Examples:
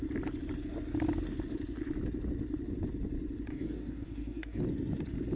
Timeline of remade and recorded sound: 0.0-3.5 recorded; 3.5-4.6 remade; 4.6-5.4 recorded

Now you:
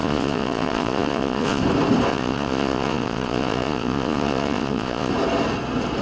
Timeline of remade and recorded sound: 0.0-1.6 remade; 1.6-2.1 recorded; 2.1-5.1 remade; 5.1-6.0 recorded

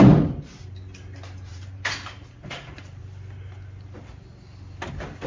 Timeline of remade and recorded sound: 0.0-1.5 recorded; 1.5-3.0 remade; 3.0-5.3 recorded

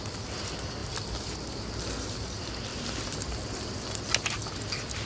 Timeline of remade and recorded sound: 0.0-5.1 recorded

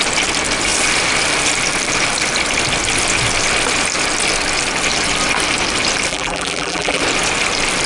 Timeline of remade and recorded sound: 0.0-6.1 recorded; 6.1-7.0 remade; 7.0-7.9 recorded